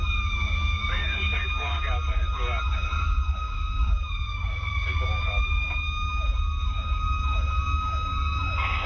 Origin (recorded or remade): remade